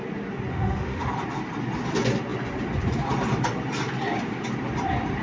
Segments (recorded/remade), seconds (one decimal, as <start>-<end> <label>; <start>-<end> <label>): 0.0-0.5 recorded; 0.5-1.1 remade; 1.1-5.2 recorded